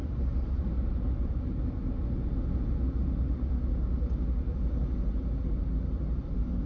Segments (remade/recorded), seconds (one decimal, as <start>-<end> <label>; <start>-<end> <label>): 0.0-1.3 remade; 1.3-6.7 recorded